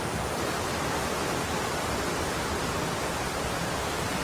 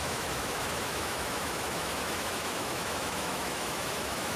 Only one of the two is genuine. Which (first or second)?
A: first